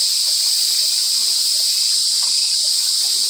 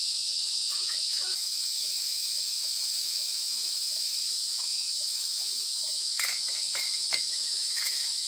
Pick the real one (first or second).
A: first